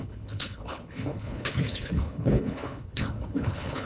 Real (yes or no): no